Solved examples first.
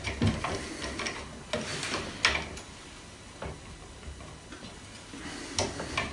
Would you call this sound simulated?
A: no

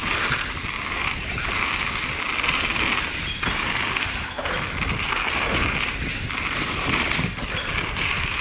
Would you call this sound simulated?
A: no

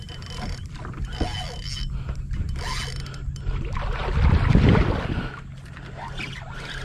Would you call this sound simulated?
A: no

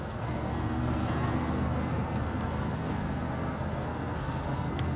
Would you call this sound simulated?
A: yes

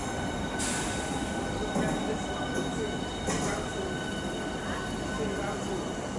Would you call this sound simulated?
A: no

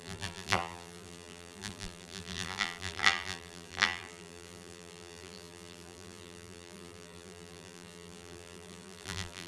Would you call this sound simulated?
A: yes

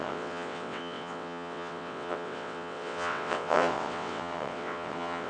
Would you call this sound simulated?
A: yes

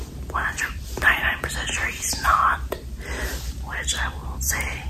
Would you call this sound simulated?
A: yes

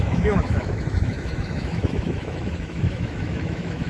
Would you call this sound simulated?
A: yes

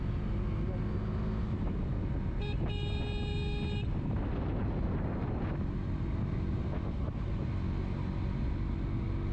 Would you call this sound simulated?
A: no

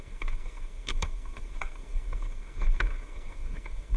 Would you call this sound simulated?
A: yes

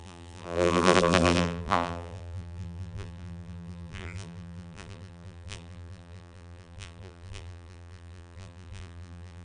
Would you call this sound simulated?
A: yes